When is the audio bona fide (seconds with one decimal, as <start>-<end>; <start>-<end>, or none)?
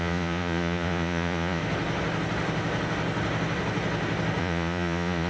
1.6-4.4